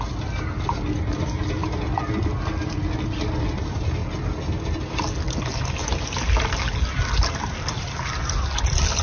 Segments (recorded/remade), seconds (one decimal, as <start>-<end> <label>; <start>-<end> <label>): 0.0-9.0 recorded

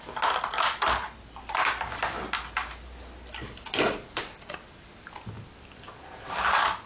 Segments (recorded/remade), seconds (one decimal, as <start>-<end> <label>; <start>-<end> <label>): 0.0-6.9 recorded

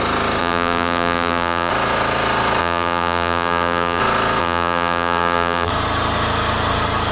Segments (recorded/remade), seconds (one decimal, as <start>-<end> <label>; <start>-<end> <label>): 0.0-0.4 recorded; 0.4-1.7 remade; 1.7-2.6 recorded; 2.6-4.0 remade; 4.0-4.4 recorded; 4.4-5.7 remade; 5.7-7.1 recorded

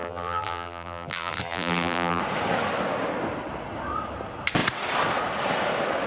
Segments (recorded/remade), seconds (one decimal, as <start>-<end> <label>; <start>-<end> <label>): 0.0-2.2 remade; 2.2-6.1 recorded

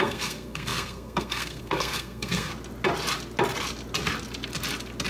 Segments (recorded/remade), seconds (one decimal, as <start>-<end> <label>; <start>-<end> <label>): 0.0-2.5 remade; 2.5-5.1 recorded